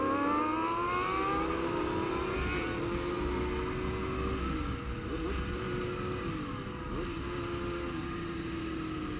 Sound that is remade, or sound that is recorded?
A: recorded